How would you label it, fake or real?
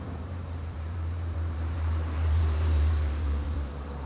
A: fake